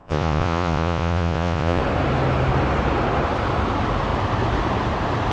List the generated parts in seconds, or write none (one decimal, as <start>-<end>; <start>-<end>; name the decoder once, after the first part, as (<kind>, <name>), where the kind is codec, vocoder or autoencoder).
0.0-1.8 (vocoder, Vocos)